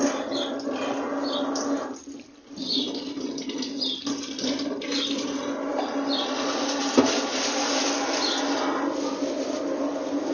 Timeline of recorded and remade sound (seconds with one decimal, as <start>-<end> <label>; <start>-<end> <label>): 0.0-10.3 recorded